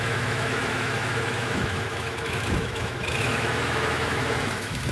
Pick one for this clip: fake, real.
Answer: fake